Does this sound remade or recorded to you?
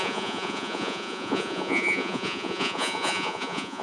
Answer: remade